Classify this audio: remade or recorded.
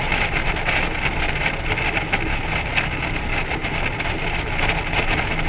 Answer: recorded